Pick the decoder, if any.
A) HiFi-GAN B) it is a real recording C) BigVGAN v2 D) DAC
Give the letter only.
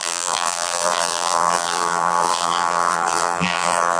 C